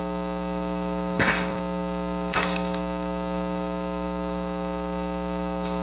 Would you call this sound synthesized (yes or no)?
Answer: yes